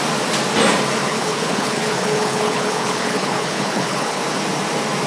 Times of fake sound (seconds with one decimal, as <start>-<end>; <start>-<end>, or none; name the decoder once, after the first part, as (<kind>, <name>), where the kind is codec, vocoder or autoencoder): 1.1-4.2 (codec, HILCodec)